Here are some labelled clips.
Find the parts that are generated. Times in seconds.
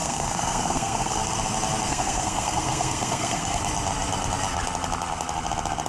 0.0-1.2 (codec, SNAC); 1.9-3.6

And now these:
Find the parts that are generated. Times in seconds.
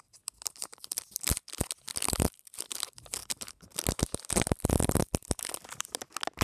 none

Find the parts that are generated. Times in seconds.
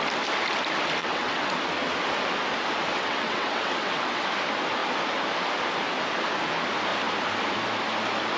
1.0-1.5 (vocoder, WaveNeXt); 2.9-4.2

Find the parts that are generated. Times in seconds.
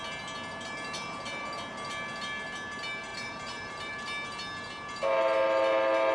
3.1-3.9 (vocoder, BigVGAN v2)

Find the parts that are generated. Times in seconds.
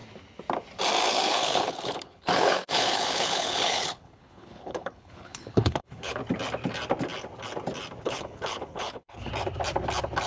1.1-6.2 (codec, HILCodec); 8.0-9.3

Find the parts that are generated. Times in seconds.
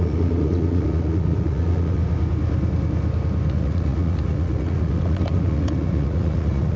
0.0-2.0 (vocoder, Vocos); 3.5-6.8